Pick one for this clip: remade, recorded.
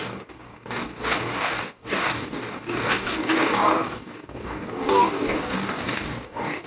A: remade